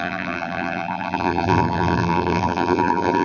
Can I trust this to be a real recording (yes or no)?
no